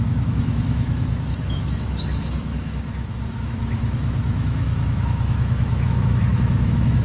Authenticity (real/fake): fake